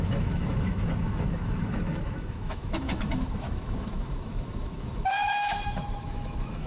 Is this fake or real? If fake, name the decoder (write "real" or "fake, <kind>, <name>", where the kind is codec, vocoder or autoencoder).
fake, autoencoder, DAC-VAE